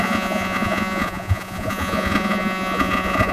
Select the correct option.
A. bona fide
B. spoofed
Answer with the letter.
B